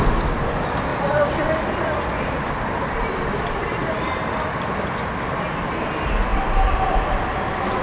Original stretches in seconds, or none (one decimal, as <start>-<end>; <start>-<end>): 0.0-7.8